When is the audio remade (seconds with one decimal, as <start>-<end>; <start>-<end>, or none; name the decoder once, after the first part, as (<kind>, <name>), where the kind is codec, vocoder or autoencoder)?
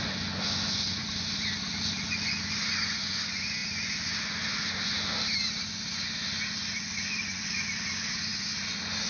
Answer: 0.0-9.1 (vocoder, Vocos)